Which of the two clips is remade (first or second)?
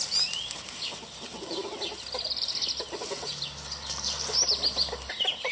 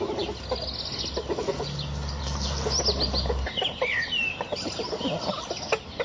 first